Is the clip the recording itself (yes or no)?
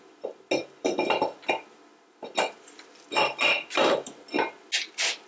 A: yes